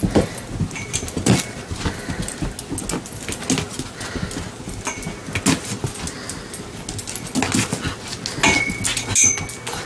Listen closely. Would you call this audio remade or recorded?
recorded